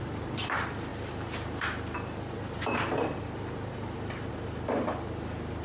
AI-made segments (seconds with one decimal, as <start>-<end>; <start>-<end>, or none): none